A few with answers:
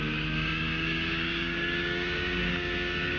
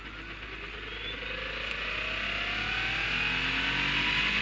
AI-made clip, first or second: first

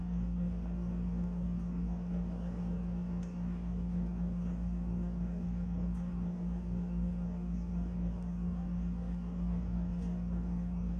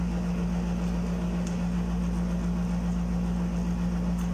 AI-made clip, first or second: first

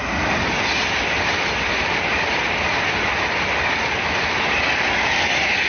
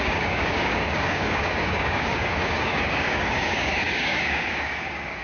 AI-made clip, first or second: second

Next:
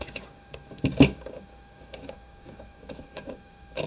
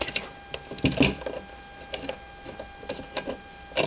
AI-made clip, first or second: first